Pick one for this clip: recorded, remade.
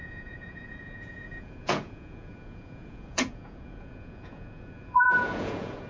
remade